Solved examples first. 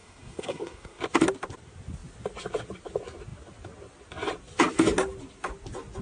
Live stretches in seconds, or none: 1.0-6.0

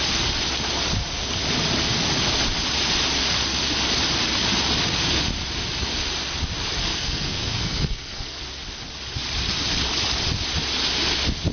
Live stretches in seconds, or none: 0.0-6.8; 8.4-11.5